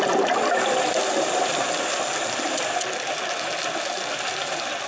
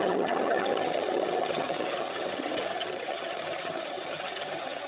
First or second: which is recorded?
first